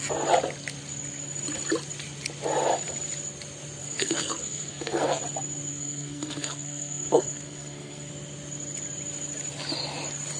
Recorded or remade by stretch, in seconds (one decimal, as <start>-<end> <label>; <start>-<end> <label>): 0.0-3.8 recorded; 3.8-5.2 remade; 5.2-5.7 recorded; 5.7-8.1 remade; 8.1-10.4 recorded